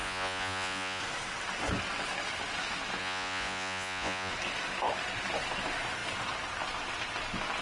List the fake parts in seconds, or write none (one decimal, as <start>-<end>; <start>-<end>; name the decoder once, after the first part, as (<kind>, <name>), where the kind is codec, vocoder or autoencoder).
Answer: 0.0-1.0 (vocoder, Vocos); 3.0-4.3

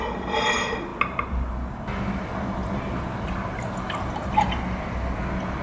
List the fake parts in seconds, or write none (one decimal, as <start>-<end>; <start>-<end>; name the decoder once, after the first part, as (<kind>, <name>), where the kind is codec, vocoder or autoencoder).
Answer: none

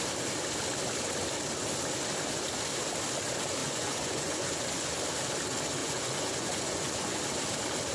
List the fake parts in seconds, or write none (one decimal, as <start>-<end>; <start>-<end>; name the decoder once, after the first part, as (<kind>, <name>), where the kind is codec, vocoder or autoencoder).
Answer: 3.6-4.9 (vocoder, Vocos); 5.8-7.2

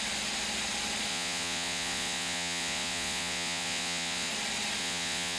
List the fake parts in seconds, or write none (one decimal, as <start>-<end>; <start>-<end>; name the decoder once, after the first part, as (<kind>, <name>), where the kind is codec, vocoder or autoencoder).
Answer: 1.1-4.3 (vocoder, Vocos); 4.8-5.4